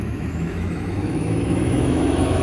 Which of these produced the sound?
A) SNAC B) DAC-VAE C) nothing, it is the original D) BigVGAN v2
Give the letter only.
B